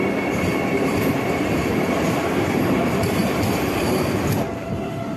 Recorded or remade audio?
remade